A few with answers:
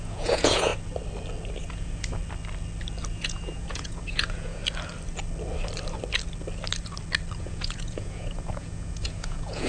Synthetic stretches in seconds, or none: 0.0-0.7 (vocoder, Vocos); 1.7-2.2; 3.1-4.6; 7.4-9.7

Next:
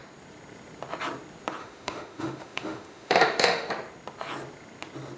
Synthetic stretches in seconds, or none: 1.6-3.7 (autoencoder, DAC-VAE)

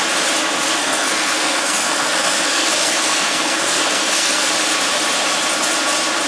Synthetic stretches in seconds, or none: 0.8-4.5 (codec, SNAC)